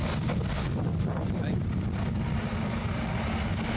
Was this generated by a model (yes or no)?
no